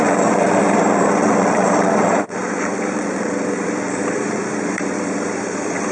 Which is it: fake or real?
fake